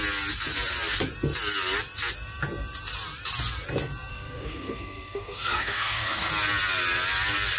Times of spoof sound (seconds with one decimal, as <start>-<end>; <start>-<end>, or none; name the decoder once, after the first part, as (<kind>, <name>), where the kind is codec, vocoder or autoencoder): 4.1-6.3 (codec, SNAC)